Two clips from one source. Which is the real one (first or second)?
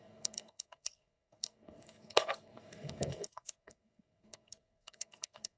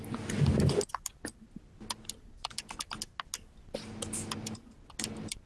second